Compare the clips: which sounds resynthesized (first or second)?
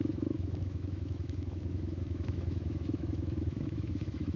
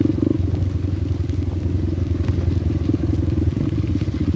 first